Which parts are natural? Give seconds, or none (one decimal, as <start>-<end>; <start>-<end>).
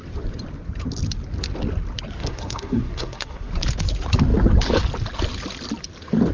0.0-2.2; 3.5-6.3